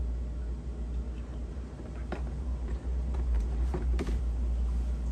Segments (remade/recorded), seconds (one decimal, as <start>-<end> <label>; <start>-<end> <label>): 0.0-1.3 recorded; 1.3-4.4 remade; 4.4-5.1 recorded